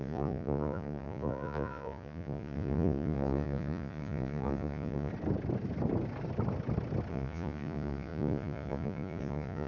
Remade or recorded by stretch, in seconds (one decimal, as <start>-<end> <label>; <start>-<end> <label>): 0.0-5.1 remade; 5.1-7.1 recorded; 7.1-9.7 remade